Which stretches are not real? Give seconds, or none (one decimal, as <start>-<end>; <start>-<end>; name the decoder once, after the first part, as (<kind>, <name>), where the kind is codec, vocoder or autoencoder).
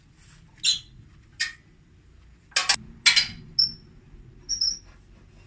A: none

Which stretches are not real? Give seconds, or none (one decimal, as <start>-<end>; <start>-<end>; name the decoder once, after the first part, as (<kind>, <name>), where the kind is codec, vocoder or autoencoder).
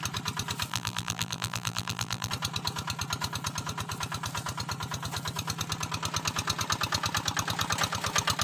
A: 0.7-2.3 (vocoder, BigVGAN v2)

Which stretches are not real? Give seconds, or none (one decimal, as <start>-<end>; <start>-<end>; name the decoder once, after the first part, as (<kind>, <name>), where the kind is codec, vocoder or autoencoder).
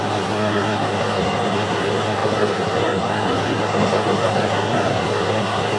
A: 0.0-5.8 (codec, SNAC)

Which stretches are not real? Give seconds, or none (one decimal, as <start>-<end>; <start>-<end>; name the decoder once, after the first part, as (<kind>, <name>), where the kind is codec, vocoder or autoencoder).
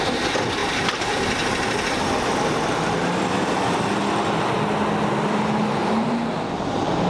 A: 0.6-1.2 (vocoder, BigVGAN v2); 5.8-7.1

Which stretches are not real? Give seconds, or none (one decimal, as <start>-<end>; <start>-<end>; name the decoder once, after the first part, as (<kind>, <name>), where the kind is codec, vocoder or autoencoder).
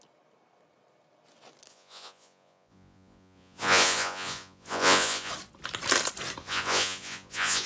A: 1.7-5.3 (vocoder, Vocos); 6.4-7.7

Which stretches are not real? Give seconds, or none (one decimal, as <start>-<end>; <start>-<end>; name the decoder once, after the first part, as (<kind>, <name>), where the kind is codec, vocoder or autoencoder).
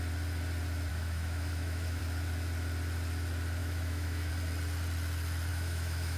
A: 0.9-2.0 (autoencoder, DAC-VAE); 3.6-4.3; 5.5-6.2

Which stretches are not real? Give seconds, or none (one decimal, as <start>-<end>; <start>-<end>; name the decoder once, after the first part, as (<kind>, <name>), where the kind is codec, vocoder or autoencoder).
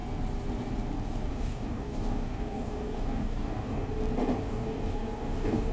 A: 1.3-3.9 (codec, DAC); 4.4-5.7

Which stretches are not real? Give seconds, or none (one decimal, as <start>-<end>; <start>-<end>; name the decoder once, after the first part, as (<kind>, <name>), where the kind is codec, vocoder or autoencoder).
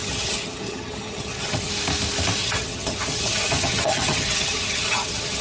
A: 0.0-1.7 (vocoder, HiFi-GAN); 2.4-5.4